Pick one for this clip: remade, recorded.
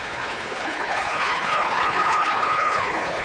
remade